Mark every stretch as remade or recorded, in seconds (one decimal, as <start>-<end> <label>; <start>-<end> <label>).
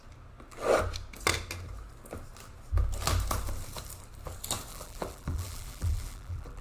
0.0-4.7 recorded; 4.7-6.6 remade